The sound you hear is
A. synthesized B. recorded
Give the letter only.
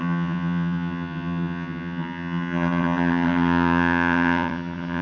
A